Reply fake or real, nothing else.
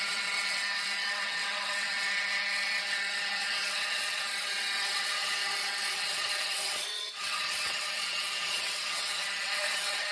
fake